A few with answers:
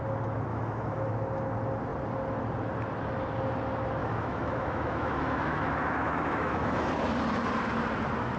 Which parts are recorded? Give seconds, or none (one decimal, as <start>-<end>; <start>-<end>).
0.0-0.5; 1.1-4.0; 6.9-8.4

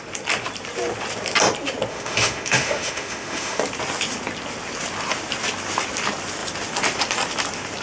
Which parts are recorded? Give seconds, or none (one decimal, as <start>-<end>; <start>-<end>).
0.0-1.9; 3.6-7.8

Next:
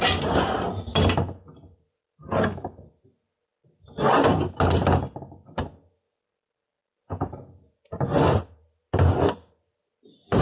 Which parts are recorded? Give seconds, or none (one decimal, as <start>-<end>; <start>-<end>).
0.0-10.4

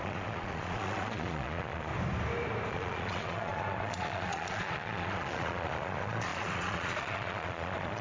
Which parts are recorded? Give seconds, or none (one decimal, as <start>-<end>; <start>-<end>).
1.9-2.7

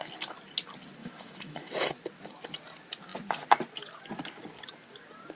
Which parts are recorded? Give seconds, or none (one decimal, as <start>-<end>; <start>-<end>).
0.0-1.0; 1.7-5.4